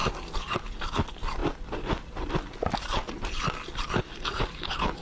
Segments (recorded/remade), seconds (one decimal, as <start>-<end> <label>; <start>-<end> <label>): 0.0-5.0 recorded